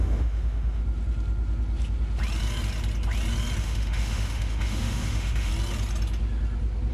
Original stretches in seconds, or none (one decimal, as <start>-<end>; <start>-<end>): 0.8-3.6; 5.5-6.9